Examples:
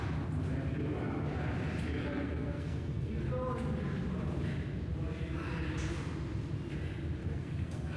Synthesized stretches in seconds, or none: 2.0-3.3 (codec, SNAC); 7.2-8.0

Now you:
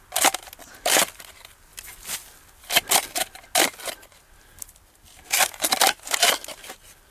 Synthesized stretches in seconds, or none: none

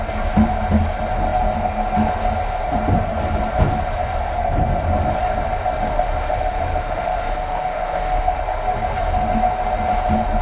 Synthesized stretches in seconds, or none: 5.9-8.4 (autoencoder, DAC-VAE)